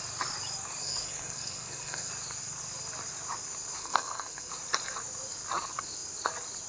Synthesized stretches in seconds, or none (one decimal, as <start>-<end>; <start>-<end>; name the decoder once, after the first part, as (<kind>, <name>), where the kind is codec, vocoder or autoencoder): 0.8-2.1 (codec, SNAC); 3.8-4.5

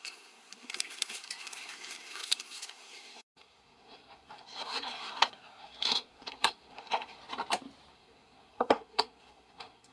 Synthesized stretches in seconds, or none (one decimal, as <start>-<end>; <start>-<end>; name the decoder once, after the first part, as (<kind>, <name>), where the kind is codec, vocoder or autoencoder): 0.0-7.2 (codec, SNAC); 7.9-9.9

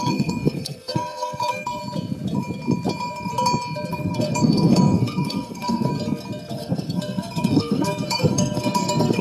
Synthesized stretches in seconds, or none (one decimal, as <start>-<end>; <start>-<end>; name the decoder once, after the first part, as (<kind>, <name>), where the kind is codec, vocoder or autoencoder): 0.0-1.8 (codec, SNAC); 3.9-5.9; 6.5-9.2

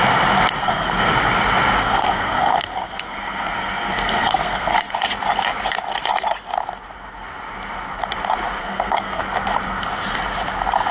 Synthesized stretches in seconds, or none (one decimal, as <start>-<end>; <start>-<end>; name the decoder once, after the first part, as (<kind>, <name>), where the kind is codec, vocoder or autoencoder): 0.6-1.1 (codec, SNAC); 1.8-4.9; 8.6-9.2

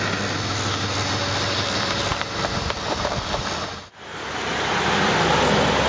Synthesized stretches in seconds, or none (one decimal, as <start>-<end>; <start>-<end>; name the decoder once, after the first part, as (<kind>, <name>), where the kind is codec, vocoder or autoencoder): none

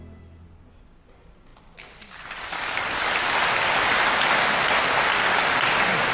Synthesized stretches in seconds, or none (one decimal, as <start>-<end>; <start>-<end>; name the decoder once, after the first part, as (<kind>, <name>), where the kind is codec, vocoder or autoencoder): none

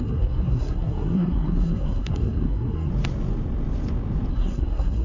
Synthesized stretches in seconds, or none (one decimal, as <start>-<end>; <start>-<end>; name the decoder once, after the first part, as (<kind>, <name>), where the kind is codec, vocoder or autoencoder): 0.0-2.9 (codec, SNAC); 4.3-5.0